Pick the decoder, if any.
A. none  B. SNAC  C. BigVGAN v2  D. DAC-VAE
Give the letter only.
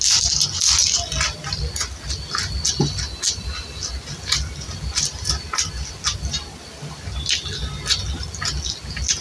A